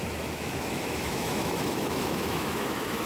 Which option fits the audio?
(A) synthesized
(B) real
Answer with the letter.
A